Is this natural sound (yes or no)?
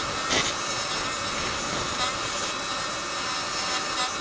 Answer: yes